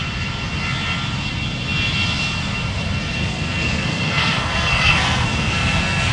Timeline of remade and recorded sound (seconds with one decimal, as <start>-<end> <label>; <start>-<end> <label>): 0.0-3.2 recorded; 3.2-6.1 remade